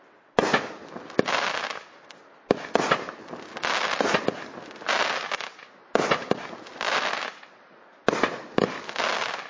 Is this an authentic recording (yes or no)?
yes